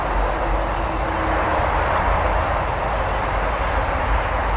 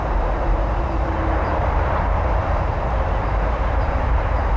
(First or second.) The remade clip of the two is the second